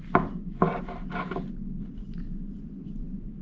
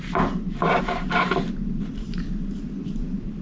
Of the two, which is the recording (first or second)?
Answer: first